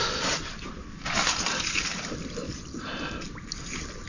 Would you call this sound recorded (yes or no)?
yes